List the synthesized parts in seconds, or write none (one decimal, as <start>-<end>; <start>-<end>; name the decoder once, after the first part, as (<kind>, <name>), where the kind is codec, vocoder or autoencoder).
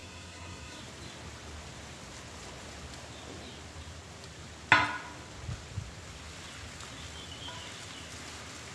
0.0-0.8 (codec, SNAC)